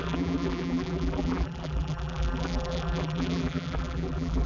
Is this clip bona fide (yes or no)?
no